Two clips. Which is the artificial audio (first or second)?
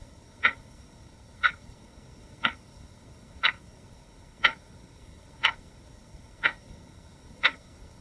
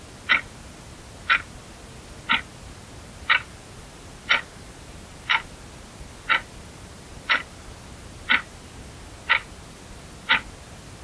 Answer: first